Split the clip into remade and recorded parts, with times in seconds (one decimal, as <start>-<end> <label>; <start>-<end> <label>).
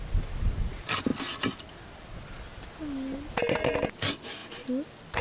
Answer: 0.0-5.2 recorded